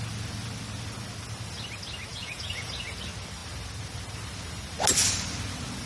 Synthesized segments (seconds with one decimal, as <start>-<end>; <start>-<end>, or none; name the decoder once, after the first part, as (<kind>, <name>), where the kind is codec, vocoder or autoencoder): 2.1-2.7 (vocoder, Vocos)